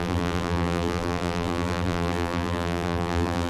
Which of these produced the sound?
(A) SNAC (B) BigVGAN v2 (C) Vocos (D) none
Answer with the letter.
B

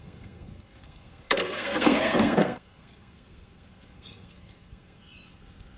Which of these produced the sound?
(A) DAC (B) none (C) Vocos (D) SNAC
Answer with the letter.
D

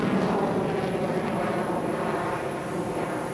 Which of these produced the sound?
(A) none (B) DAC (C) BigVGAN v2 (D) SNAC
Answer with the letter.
A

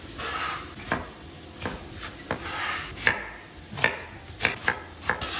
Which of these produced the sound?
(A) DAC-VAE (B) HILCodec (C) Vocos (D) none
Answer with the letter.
D